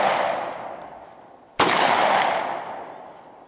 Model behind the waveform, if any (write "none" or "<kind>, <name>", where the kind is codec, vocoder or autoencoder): none